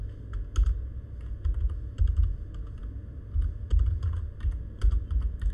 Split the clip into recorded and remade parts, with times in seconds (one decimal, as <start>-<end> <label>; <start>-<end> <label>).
0.0-5.5 recorded